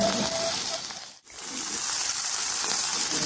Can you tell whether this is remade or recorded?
remade